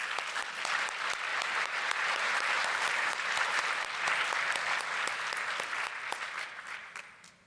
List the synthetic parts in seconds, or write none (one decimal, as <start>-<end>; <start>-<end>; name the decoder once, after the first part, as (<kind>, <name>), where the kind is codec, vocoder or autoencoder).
1.3-3.6 (vocoder, BigVGAN v2)